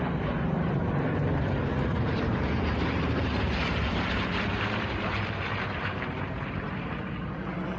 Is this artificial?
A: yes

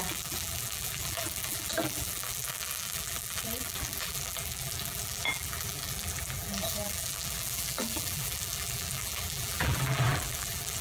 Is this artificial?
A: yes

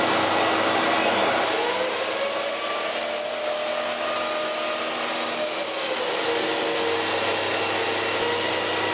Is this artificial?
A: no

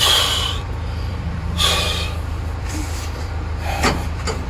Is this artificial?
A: yes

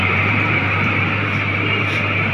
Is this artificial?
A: yes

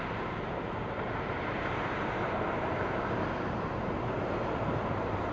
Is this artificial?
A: yes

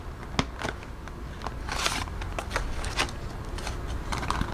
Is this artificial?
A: no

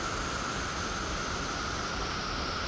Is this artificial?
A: no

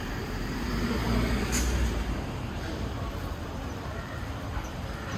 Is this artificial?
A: yes